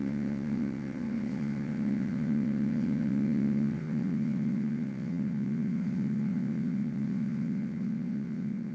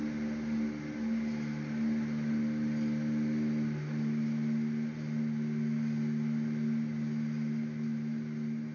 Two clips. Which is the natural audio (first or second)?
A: second